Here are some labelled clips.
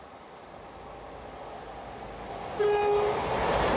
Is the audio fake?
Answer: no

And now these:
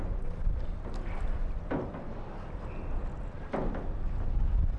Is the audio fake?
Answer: no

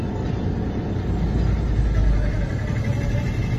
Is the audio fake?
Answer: no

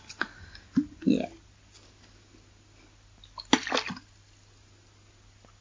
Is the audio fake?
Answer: no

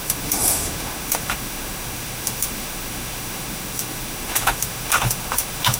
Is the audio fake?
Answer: yes